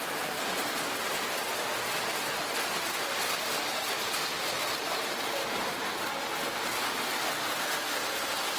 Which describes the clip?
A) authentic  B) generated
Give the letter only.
A